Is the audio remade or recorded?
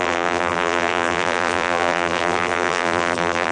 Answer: remade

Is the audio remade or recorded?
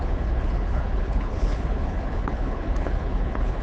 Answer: remade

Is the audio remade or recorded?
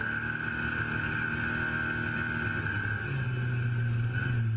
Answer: recorded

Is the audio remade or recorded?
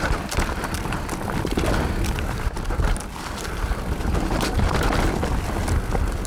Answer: recorded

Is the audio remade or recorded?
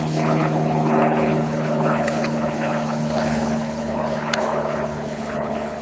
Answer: remade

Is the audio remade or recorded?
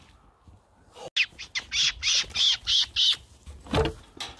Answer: recorded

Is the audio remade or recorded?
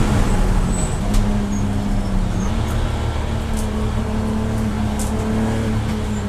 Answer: recorded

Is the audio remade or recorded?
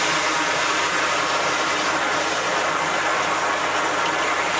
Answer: recorded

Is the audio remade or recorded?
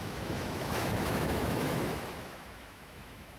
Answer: remade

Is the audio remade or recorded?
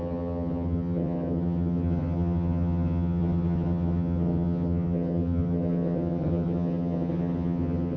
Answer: remade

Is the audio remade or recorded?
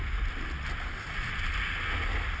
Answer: recorded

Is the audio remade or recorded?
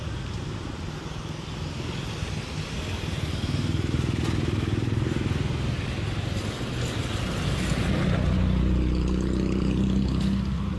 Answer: recorded